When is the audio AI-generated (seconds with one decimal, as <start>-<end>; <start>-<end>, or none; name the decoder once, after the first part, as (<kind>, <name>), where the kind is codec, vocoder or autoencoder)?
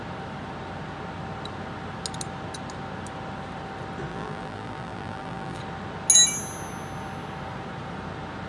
4.1-5.6 (vocoder, BigVGAN v2)